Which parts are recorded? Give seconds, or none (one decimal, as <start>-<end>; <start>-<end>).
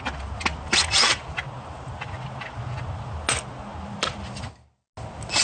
0.0-5.4